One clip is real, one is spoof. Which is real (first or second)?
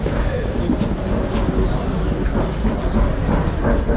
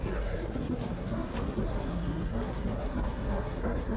first